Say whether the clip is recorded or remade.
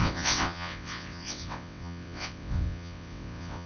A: remade